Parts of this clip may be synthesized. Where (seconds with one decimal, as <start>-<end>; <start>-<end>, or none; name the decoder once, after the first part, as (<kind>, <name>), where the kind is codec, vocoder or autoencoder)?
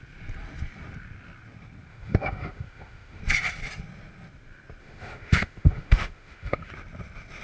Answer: 1.9-3.2 (autoencoder, DAC-VAE); 4.8-6.7